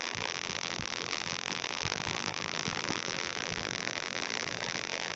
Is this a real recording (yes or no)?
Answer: no